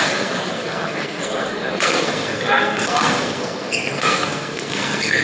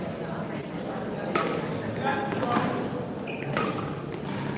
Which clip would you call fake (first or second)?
first